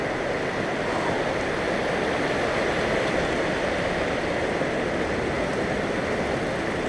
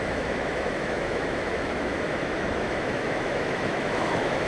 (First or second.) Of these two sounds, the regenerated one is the second